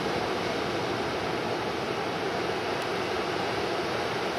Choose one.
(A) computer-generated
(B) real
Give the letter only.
B